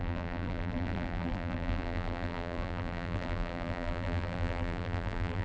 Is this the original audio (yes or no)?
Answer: no